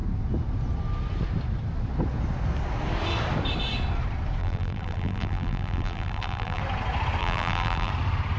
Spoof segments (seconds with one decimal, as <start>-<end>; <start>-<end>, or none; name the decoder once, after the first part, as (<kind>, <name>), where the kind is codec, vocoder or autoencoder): 4.4-6.6 (vocoder, BigVGAN v2); 7.2-7.9